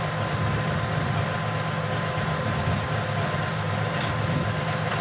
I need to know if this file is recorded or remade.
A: recorded